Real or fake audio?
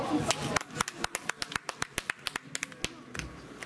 real